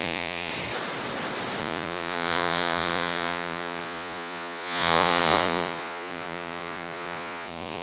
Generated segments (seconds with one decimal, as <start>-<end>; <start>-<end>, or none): 0.0-0.5; 1.6-7.8